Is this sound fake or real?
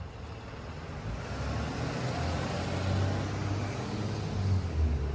real